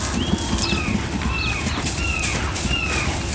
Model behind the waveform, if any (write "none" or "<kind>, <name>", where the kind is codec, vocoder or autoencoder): none